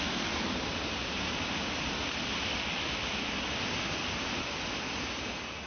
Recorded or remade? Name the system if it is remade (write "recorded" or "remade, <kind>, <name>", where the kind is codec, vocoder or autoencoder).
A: recorded